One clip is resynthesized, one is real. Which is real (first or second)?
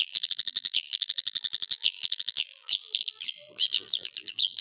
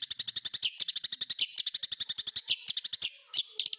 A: second